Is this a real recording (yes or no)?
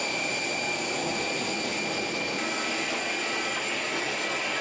yes